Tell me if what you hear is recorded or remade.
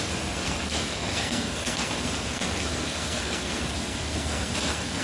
remade